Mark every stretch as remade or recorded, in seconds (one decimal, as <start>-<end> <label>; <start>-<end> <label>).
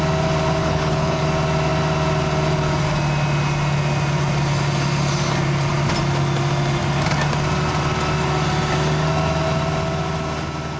0.0-0.6 recorded; 0.6-1.2 remade; 1.2-10.8 recorded